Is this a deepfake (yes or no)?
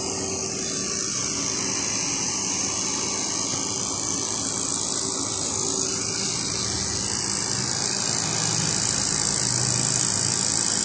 no